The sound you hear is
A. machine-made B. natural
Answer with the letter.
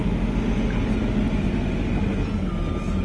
B